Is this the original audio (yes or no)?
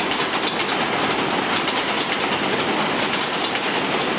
yes